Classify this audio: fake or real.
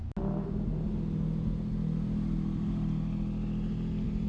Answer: real